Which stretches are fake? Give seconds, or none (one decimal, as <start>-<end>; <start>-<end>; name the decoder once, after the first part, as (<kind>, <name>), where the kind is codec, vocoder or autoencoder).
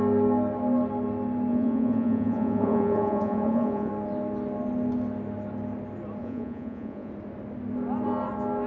1.5-3.9 (vocoder, Vocos); 6.2-7.1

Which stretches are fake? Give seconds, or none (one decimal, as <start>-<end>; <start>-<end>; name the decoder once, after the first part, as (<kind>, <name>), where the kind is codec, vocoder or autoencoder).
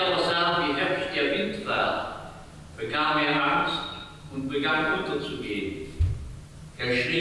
3.6-4.1 (vocoder, Vocos)